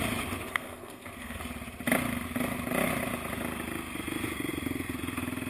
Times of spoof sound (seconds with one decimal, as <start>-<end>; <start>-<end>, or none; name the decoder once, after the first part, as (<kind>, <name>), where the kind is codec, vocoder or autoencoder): 0.5-1.4 (codec, SNAC)